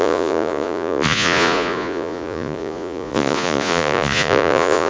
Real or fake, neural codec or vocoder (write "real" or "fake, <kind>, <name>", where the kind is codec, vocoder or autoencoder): fake, vocoder, Vocos